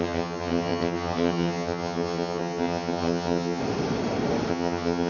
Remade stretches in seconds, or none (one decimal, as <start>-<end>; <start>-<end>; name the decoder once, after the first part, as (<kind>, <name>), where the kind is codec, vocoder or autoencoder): 0.0-3.6 (vocoder, HiFi-GAN); 4.5-5.1